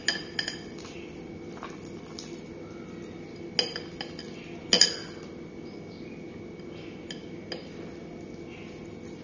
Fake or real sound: real